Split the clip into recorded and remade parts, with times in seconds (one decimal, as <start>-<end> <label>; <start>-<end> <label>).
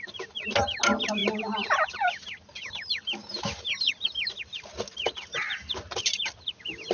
0.0-6.9 recorded